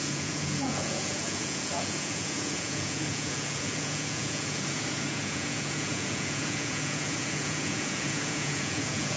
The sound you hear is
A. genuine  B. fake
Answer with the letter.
B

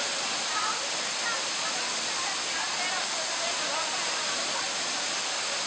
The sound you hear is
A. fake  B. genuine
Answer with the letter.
B